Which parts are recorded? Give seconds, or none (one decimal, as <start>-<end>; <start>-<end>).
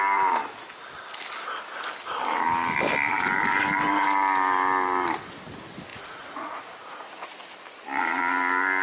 0.0-5.9; 7.1-8.8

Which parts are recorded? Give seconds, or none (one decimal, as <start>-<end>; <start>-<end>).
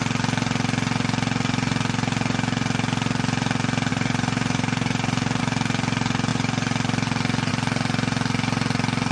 0.0-3.9; 5.4-9.1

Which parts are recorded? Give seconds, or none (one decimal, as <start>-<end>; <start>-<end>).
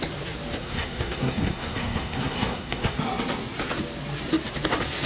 0.0-0.6; 3.0-5.1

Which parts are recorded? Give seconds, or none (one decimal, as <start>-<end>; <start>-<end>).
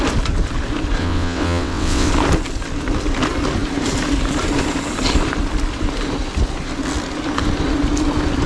0.0-1.0; 2.1-8.5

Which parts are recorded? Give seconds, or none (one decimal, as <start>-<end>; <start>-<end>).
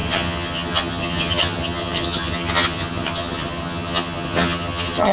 none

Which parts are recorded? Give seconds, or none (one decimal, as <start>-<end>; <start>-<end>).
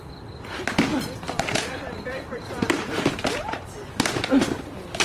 0.0-0.9; 3.9-5.0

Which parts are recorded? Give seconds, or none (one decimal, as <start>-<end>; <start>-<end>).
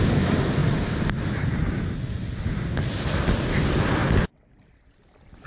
0.0-5.5